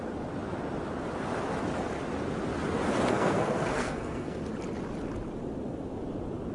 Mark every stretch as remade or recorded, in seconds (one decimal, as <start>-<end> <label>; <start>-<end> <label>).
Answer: 0.0-3.1 recorded; 3.1-4.4 remade; 4.4-6.5 recorded